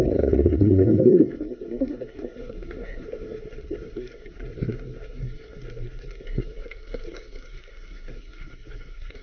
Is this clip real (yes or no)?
no